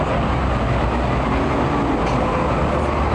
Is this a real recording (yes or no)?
yes